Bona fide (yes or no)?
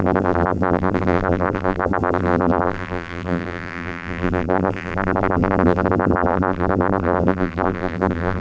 no